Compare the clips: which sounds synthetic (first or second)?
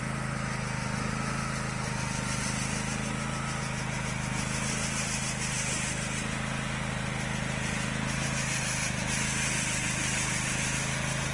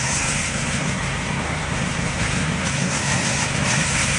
second